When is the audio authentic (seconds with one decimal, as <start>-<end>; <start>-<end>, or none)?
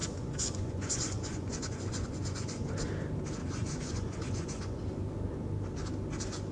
2.7-3.4; 4.8-6.5